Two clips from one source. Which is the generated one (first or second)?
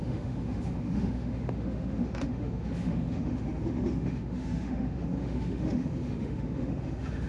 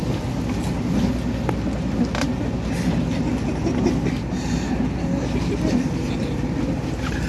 first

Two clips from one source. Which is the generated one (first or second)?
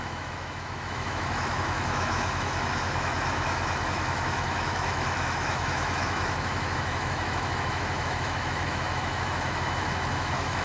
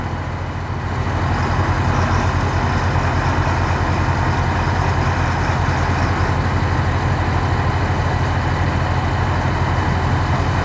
first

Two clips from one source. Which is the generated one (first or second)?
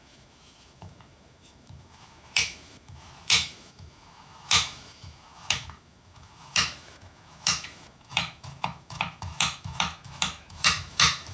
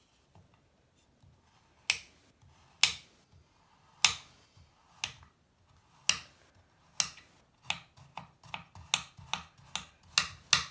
first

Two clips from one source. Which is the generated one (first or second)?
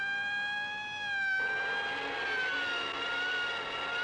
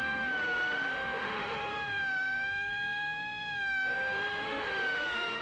second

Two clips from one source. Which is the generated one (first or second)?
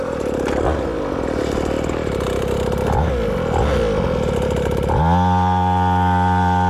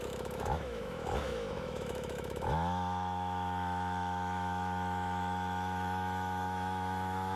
second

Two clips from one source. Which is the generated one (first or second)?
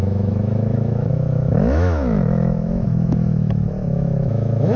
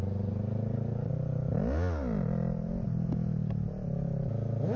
first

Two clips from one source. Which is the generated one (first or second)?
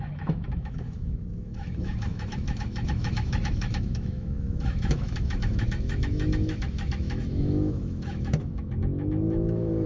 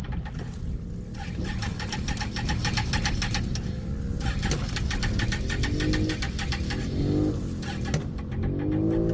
first